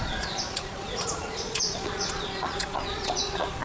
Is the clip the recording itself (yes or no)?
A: no